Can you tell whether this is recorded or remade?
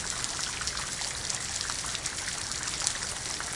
recorded